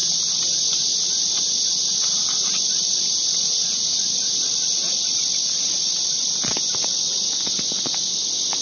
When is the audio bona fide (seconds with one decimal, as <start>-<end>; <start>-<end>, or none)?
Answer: 0.0-1.5